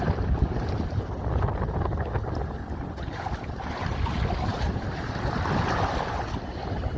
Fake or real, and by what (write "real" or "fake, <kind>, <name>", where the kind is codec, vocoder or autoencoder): real